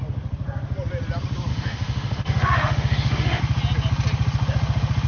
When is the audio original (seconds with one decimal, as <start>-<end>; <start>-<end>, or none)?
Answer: 0.0-1.5; 3.4-5.1